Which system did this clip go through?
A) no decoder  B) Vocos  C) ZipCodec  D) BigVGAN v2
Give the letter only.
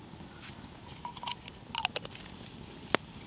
A